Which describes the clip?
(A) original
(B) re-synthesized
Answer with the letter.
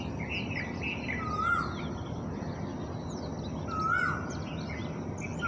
A